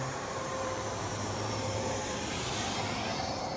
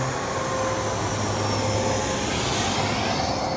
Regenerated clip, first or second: first